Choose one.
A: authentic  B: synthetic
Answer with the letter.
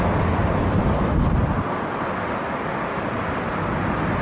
A